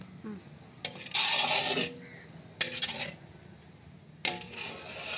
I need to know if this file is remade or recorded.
recorded